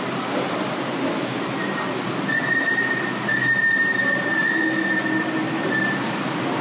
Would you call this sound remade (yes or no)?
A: no